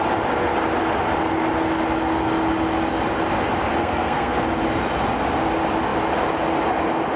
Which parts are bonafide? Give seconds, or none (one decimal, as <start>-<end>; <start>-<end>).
0.0-3.8; 4.4-7.2